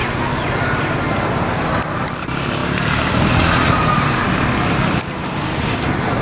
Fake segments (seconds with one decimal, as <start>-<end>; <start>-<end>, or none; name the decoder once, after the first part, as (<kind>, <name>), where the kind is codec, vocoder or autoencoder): 0.0-0.8 (vocoder, BigVGAN v2)